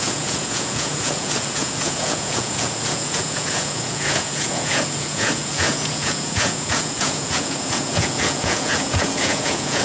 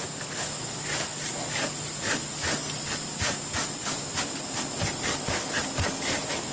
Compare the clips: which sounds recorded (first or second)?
second